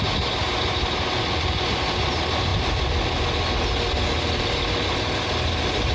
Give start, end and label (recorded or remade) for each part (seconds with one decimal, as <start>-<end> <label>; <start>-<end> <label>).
0.0-5.9 recorded